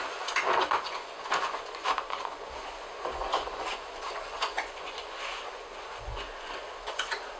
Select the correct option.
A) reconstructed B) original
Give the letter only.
A